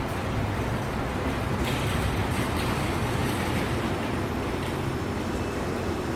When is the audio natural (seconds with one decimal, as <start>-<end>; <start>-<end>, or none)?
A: 0.0-2.2; 2.8-3.2; 4.2-6.2